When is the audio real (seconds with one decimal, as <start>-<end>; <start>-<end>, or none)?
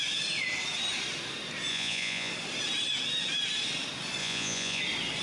0.0-1.7; 2.3-4.2; 4.8-5.2